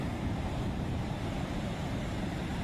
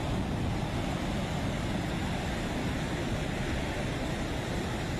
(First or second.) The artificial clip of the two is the first